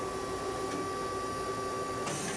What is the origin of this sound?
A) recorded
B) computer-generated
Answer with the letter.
A